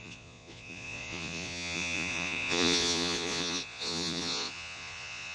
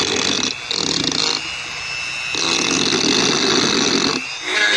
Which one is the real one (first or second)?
second